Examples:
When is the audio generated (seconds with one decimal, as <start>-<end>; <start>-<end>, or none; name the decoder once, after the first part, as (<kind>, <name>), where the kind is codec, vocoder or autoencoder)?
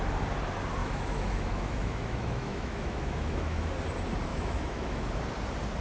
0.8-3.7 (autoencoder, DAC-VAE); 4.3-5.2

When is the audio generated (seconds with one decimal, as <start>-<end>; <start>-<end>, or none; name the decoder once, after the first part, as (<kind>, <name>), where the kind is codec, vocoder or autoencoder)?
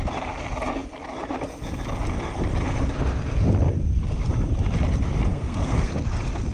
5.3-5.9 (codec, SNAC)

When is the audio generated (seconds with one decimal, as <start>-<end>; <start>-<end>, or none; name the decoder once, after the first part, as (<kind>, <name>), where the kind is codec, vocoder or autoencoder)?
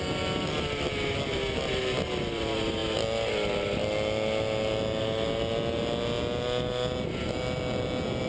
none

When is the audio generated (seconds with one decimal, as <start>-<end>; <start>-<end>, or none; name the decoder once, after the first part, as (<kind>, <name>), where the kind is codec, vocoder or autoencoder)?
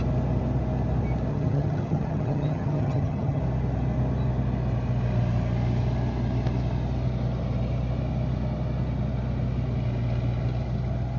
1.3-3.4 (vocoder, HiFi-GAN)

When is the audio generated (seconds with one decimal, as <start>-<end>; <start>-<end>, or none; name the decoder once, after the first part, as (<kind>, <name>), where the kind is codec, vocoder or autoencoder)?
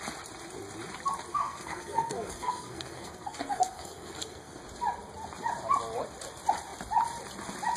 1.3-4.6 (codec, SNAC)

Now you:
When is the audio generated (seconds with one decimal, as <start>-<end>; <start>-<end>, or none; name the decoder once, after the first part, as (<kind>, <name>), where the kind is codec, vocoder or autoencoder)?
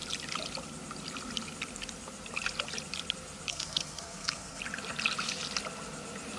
3.5-4.6 (codec, SNAC)